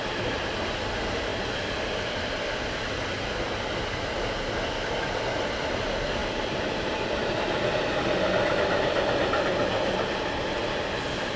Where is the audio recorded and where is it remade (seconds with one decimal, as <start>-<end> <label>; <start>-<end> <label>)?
0.0-11.4 recorded